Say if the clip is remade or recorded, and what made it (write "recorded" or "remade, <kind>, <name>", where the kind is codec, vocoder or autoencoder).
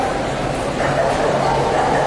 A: recorded